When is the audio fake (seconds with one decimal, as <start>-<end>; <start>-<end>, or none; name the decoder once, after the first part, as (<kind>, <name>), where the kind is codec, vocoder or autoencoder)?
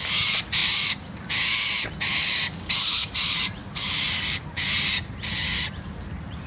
0.6-1.2 (vocoder, BigVGAN v2)